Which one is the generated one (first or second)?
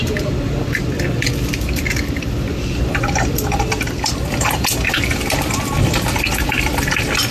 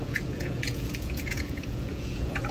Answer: second